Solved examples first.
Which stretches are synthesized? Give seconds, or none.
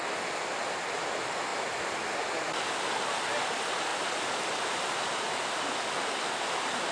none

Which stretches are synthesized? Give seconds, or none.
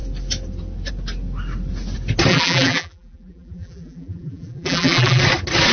2.3-5.2 (vocoder, BigVGAN v2)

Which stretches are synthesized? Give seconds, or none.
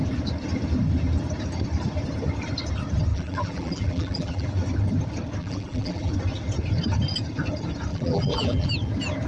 3.1-4.5 (vocoder, BigVGAN v2); 5.4-6.1; 7.9-8.7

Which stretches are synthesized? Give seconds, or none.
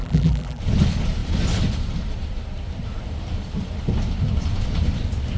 0.0-0.6 (vocoder, BigVGAN v2)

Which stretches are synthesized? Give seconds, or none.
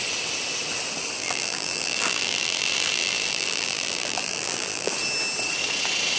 1.2-4.9 (vocoder, BigVGAN v2)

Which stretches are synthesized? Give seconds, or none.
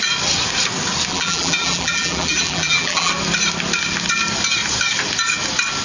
1.1-3.1 (vocoder, BigVGAN v2)